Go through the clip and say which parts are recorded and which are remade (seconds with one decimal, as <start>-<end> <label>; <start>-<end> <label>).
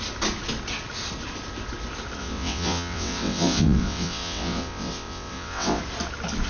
0.0-2.2 recorded; 2.2-5.8 remade; 5.8-6.5 recorded